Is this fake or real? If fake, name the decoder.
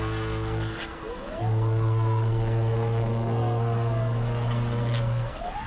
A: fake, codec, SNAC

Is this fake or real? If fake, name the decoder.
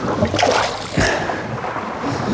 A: real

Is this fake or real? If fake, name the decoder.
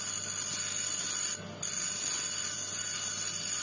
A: real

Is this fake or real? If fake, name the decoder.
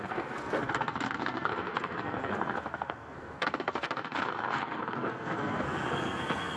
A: fake, codec, SNAC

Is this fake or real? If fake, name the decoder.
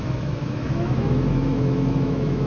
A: fake, autoencoder, DAC-VAE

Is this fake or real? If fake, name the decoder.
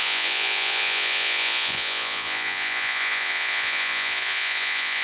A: fake, vocoder, Vocos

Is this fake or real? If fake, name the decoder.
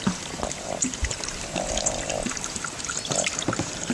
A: fake, vocoder, BigVGAN v2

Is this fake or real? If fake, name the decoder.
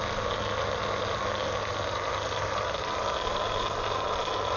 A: real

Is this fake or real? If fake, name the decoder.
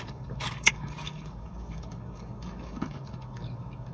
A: fake, codec, DAC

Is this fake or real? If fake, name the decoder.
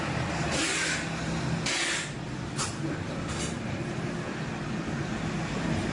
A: real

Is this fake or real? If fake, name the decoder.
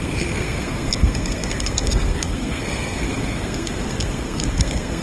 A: fake, codec, SNAC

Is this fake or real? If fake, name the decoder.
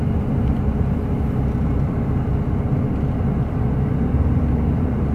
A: real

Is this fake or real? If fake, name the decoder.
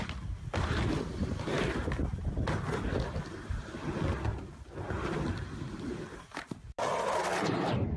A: real